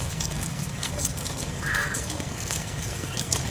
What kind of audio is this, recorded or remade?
remade